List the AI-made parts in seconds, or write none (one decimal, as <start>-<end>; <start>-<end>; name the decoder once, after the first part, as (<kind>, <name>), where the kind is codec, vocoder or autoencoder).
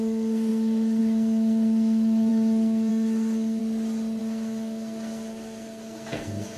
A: 0.0-3.6 (codec, SNAC); 4.2-6.6